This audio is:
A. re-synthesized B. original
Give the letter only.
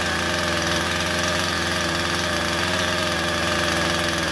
B